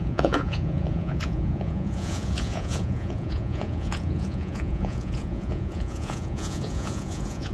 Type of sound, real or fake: fake